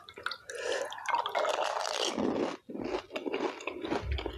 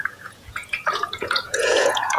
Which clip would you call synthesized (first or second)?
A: second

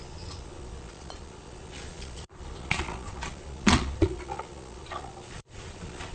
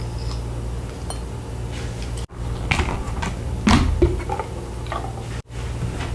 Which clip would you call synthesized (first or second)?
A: first